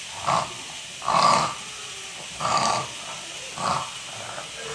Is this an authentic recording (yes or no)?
yes